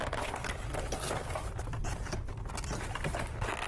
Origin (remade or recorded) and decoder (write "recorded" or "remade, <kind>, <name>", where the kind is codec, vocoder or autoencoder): remade, vocoder, BigVGAN v2